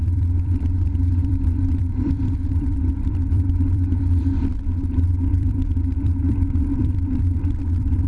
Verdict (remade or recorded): remade